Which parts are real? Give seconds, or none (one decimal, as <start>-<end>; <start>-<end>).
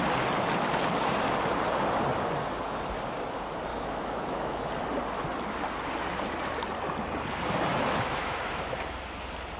0.0-3.7; 4.7-7.7; 8.6-9.6